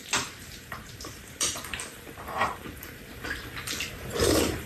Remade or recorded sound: remade